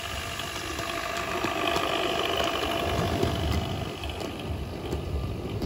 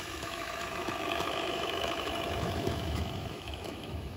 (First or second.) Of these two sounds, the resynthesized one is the second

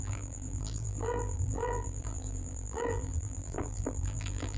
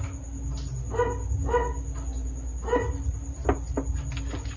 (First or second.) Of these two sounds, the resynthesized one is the first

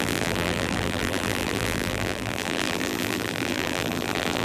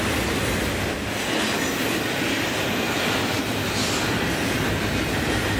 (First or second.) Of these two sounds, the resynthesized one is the first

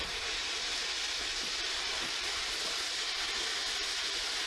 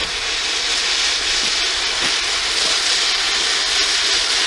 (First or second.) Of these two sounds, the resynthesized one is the first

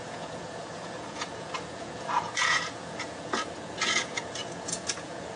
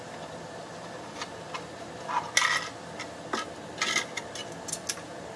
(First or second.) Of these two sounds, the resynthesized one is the first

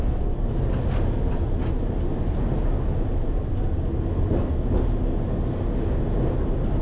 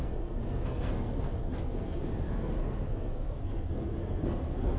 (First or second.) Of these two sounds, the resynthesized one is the second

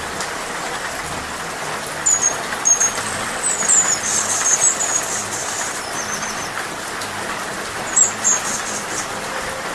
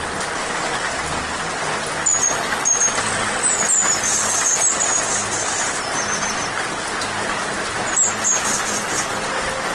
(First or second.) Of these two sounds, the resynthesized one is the first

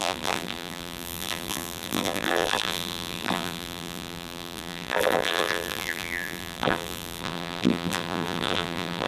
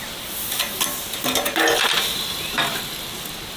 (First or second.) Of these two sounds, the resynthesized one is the first